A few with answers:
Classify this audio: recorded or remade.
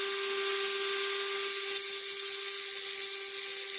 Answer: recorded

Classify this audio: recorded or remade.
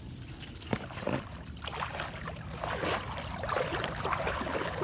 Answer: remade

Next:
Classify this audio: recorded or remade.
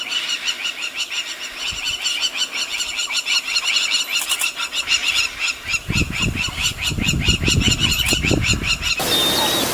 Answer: recorded